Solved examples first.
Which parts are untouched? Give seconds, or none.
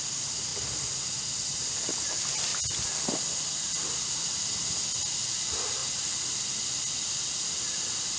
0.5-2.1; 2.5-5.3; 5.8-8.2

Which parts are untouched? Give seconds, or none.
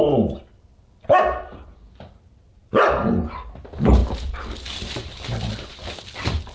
0.0-6.5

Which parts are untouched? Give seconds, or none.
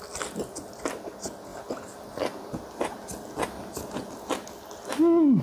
0.0-5.4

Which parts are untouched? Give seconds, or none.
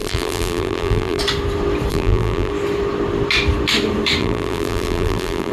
1.2-1.9; 2.5-4.2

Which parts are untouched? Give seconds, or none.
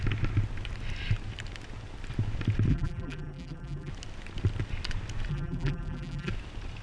0.0-2.7; 3.9-5.3; 6.3-6.8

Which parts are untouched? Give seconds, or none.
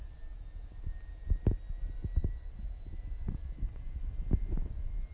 0.0-2.2; 4.0-5.1